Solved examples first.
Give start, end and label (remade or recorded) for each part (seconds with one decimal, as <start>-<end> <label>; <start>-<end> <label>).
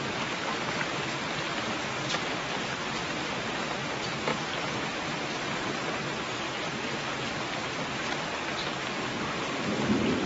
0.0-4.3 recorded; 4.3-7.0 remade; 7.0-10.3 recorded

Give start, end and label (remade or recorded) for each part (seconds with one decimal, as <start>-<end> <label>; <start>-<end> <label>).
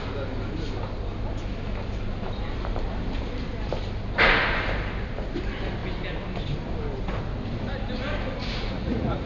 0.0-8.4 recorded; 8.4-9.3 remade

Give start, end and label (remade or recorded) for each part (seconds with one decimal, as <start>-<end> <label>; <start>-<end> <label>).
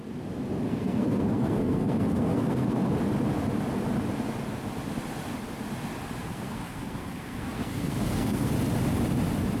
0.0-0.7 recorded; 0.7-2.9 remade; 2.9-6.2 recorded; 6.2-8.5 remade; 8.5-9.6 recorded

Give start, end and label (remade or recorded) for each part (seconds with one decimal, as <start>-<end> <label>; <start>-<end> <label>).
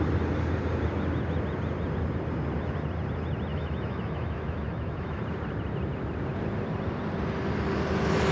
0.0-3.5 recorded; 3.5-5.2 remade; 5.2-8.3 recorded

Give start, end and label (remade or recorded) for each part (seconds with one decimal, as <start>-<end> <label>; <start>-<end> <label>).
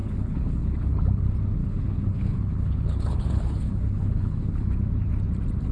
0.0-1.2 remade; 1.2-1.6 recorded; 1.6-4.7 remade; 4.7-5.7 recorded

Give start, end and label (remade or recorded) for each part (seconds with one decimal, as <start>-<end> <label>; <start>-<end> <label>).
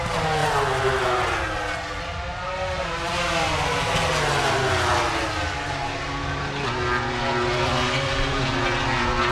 0.0-0.4 recorded; 0.4-1.1 remade; 1.1-9.3 recorded